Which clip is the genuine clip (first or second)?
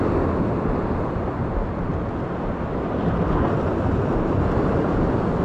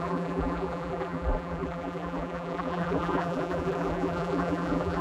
first